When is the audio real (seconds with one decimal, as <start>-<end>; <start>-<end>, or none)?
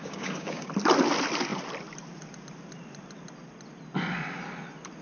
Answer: 0.7-5.0